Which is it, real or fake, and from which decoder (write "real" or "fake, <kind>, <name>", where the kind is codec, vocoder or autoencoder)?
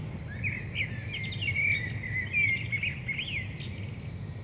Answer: real